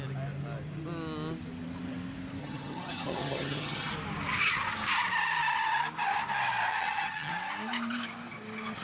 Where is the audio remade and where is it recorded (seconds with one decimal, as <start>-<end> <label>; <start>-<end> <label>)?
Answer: 0.0-2.4 recorded; 2.4-3.9 remade; 3.9-6.7 recorded; 6.7-7.3 remade; 7.3-8.8 recorded